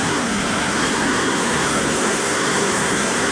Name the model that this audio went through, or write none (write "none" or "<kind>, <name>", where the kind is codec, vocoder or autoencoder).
codec, SNAC